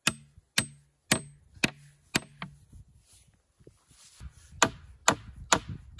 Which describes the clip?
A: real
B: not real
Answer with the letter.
A